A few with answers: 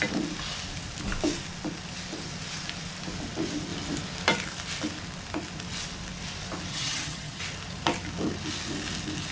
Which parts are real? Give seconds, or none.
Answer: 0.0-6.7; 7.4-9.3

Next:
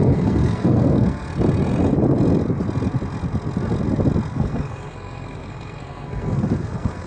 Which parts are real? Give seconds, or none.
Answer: 1.3-4.3

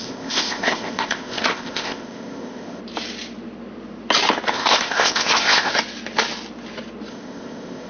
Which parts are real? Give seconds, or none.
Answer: 2.8-4.5; 5.7-7.1

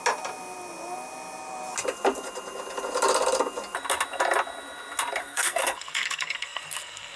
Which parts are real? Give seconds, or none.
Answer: 0.0-5.2

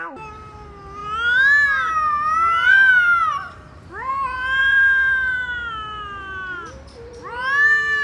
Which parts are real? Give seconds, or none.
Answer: 0.0-3.2; 4.1-4.6; 5.7-8.0

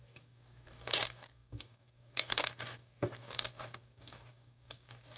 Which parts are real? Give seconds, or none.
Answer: none

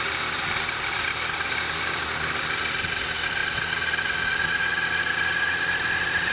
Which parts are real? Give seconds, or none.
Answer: 0.0-6.3

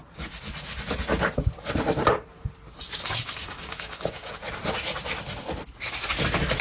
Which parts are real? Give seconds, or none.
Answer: 0.0-3.0; 4.3-6.6